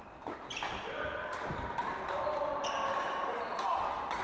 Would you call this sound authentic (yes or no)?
yes